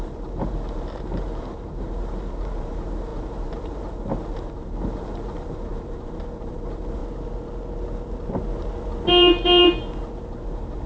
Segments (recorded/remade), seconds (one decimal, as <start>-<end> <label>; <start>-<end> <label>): 0.0-7.0 remade; 7.0-10.3 recorded; 10.3-10.9 remade